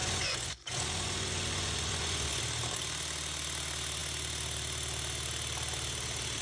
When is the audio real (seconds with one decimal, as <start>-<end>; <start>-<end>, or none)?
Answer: 2.4-6.4

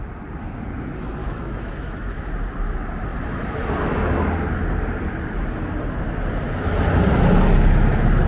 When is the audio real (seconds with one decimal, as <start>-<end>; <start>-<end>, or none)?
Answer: 0.0-1.2; 2.3-8.3

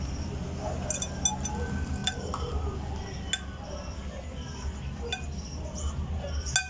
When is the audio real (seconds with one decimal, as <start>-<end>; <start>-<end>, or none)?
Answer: 0.0-6.7

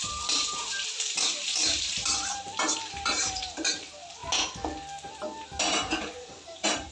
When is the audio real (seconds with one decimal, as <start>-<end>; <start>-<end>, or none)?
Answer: 4.2-5.6